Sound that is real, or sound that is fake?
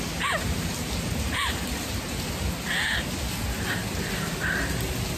real